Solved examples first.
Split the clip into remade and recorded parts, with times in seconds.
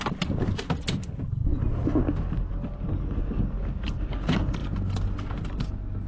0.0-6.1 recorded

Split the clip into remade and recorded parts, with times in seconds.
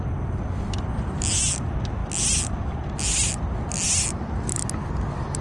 0.0-5.4 recorded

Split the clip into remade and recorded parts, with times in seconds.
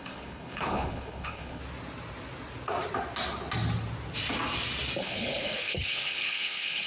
0.0-1.6 remade; 1.6-5.0 recorded; 5.0-6.9 remade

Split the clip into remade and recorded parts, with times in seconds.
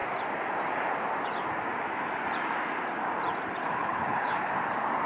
0.0-3.8 recorded; 3.8-4.5 remade; 4.5-5.1 recorded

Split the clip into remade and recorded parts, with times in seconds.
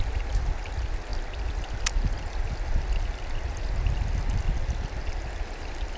0.0-6.0 recorded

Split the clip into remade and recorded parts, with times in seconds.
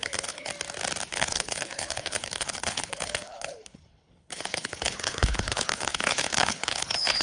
0.0-0.5 remade; 0.5-1.1 recorded; 1.1-7.2 remade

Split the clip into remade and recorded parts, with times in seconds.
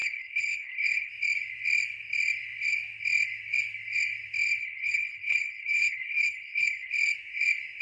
0.0-1.1 remade; 1.1-4.6 recorded; 4.6-6.9 remade; 6.9-7.8 recorded